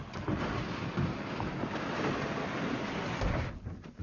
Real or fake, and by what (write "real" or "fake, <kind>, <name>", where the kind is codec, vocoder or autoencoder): real